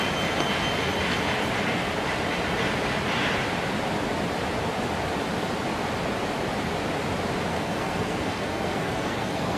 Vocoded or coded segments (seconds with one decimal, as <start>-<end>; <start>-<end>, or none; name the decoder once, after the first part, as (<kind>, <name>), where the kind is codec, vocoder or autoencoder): 7.5-9.6 (codec, SNAC)